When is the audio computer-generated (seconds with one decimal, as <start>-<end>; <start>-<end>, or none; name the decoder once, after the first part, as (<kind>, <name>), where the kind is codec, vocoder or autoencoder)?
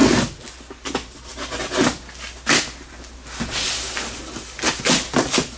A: none